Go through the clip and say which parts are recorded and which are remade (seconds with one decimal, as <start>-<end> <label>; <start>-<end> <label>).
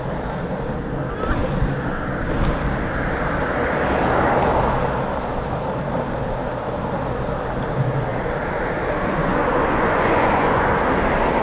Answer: 0.0-9.1 recorded; 9.1-10.7 remade; 10.7-11.4 recorded